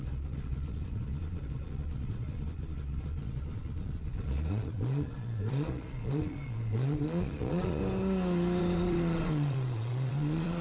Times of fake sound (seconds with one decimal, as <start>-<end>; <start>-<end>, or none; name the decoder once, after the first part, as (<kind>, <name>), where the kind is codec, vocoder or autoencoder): 0.0-7.8 (vocoder, Vocos); 8.6-10.6